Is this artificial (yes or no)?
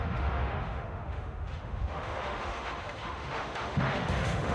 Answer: yes